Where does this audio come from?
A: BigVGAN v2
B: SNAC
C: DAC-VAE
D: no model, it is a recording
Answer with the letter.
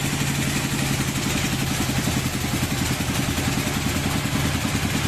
D